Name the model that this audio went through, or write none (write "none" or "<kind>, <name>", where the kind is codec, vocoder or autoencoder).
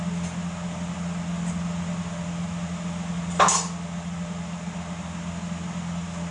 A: none